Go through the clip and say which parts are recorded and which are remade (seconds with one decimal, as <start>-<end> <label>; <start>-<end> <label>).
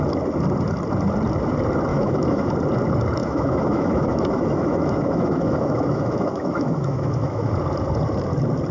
0.0-1.9 recorded; 1.9-2.5 remade; 2.5-3.2 recorded; 3.2-7.5 remade; 7.5-8.7 recorded